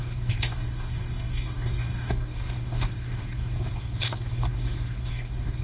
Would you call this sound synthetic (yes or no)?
yes